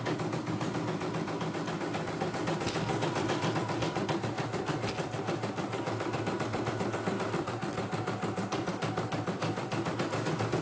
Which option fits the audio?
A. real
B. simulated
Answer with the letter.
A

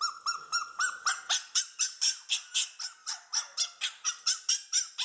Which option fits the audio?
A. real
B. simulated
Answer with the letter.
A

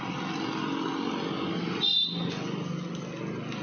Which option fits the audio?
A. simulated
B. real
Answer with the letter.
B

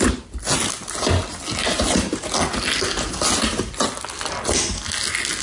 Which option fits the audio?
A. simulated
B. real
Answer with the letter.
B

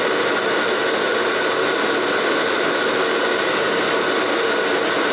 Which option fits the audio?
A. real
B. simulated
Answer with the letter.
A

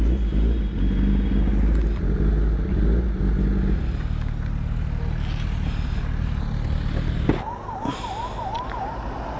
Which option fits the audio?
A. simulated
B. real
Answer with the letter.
B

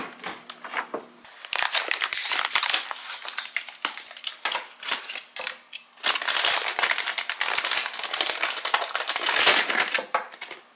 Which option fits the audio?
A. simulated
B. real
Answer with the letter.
B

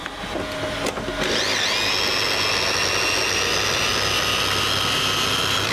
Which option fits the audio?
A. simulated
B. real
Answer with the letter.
B